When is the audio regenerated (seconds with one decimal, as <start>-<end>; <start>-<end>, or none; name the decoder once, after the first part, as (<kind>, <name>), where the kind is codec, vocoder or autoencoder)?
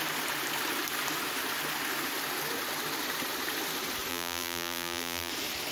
4.1-5.3 (vocoder, BigVGAN v2)